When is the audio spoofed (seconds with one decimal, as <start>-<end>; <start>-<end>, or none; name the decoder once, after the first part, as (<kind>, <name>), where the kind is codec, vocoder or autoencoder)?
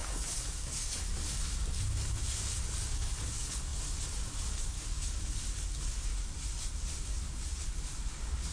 0.0-6.1 (codec, DAC); 7.0-8.5